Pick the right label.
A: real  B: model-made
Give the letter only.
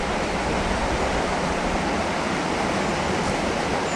A